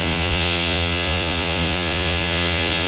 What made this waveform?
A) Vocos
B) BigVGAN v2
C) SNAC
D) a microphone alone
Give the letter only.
A